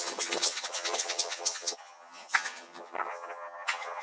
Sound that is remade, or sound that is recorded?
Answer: remade